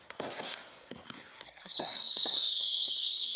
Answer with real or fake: fake